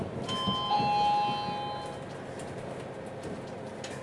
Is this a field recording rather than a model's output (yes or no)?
yes